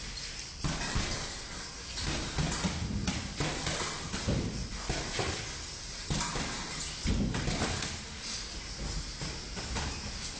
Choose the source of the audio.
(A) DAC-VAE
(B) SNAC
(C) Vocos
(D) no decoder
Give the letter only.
D